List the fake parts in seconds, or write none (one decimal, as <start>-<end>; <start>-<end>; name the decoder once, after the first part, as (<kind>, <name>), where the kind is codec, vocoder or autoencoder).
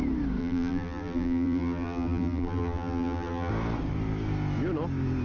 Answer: 0.4-3.5 (vocoder, BigVGAN v2)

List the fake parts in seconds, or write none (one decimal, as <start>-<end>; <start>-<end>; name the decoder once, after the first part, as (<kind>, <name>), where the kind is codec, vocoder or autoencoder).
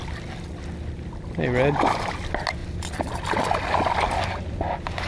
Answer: none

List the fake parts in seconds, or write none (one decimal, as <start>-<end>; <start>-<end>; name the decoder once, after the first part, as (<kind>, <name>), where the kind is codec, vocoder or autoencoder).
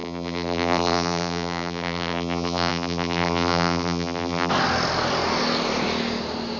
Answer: 0.0-4.5 (vocoder, BigVGAN v2)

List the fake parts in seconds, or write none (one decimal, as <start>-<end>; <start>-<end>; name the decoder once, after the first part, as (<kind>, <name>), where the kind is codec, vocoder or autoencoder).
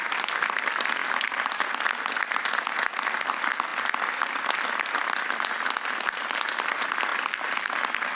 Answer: 1.0-1.6 (vocoder, BigVGAN v2); 7.1-7.7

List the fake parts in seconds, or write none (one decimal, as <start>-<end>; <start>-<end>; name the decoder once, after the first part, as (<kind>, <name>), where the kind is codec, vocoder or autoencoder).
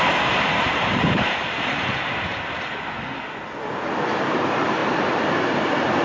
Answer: 0.0-2.3 (vocoder, BigVGAN v2); 3.0-6.0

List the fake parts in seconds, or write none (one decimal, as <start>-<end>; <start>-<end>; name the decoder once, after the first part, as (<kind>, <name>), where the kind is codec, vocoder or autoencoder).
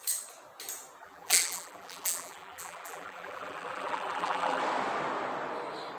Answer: 1.0-4.6 (vocoder, BigVGAN v2)